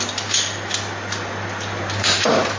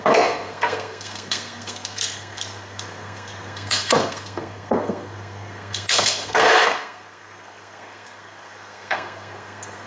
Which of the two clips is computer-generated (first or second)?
second